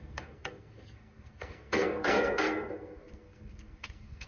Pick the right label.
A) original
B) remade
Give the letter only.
B